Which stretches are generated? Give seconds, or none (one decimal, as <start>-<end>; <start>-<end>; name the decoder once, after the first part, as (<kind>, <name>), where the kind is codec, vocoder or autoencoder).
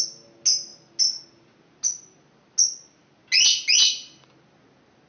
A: none